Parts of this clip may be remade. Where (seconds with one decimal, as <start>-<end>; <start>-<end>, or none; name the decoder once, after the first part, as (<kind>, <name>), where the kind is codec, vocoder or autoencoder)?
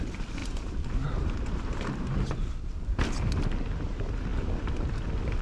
0.4-2.7 (vocoder, BigVGAN v2)